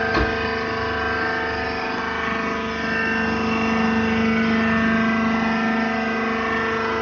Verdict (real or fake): real